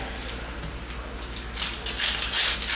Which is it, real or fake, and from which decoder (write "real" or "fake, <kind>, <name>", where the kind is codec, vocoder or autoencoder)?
real